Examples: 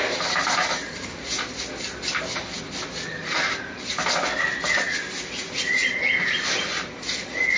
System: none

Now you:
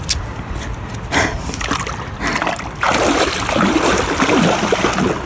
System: none